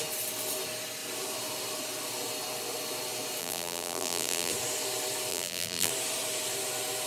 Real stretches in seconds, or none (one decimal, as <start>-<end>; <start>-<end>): 0.0-3.4; 4.5-5.3; 5.9-7.1